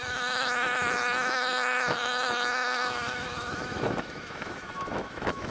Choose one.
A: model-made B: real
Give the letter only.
A